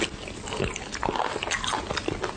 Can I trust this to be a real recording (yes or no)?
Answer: yes